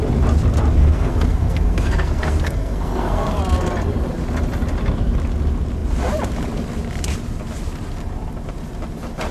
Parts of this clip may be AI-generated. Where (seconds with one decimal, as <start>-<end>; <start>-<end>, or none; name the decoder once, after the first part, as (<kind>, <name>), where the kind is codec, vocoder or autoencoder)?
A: 0.8-3.4 (codec, SNAC)